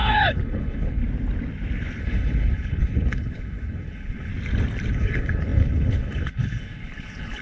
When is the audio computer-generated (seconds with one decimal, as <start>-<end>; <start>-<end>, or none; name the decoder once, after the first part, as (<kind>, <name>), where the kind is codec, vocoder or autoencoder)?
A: 0.0-1.0 (codec, HILCodec); 2.0-4.3; 4.9-7.4